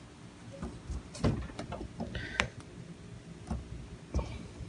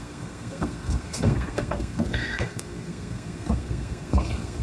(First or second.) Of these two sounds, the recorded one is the first